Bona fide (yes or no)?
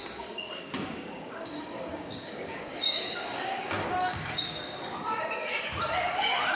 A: no